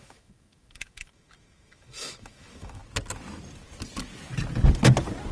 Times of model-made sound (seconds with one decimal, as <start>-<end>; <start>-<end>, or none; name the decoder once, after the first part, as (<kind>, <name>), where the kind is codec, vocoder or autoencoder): 0.0-2.8 (autoencoder, DAC-VAE)